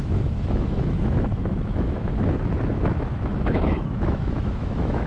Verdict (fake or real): fake